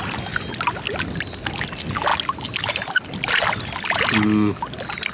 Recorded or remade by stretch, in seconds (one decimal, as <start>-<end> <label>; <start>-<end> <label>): 0.0-5.1 recorded